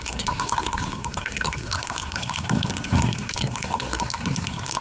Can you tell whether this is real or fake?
fake